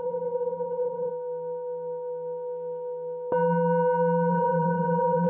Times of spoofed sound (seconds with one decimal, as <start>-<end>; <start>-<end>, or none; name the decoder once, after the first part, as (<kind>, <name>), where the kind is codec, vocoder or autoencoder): 0.0-1.1 (vocoder, HiFi-GAN); 4.3-5.3